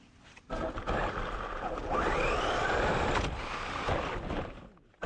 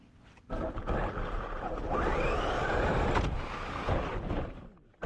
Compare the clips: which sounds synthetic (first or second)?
first